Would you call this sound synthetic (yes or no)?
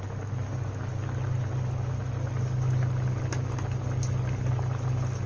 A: no